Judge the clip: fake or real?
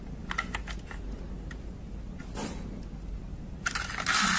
real